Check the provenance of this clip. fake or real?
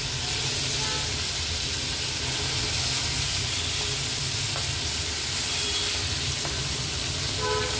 real